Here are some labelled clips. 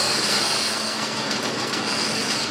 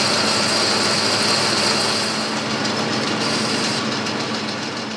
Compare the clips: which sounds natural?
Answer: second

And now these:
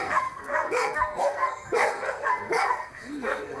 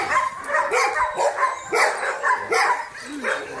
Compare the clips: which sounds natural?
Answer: second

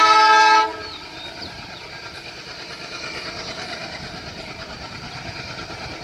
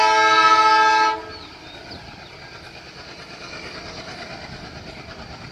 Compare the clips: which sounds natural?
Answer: second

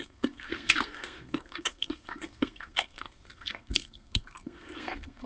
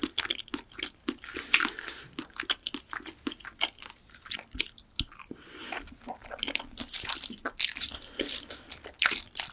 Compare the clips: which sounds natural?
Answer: second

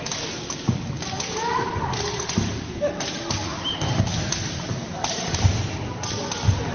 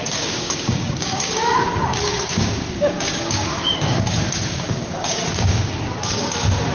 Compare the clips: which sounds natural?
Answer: first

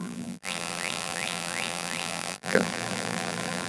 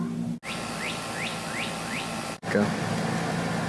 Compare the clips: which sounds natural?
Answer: second